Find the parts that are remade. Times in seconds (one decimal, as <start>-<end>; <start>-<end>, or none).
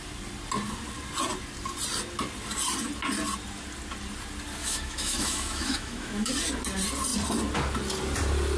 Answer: 4.6-6.3